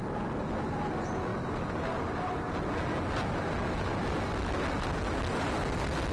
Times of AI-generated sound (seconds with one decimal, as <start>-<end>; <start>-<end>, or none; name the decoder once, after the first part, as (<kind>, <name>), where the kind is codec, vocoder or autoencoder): none